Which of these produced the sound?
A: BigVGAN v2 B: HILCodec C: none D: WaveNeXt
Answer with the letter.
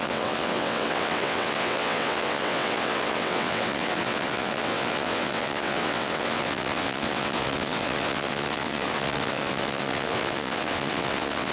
D